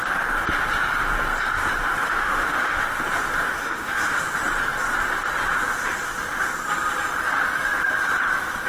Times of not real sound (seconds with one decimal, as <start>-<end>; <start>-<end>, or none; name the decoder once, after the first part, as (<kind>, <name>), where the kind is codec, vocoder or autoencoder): 2.0-2.8 (autoencoder, DAC-VAE); 3.6-4.2